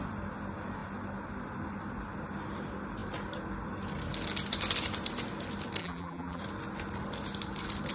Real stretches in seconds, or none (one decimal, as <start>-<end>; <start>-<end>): 0.0-5.8; 6.4-7.9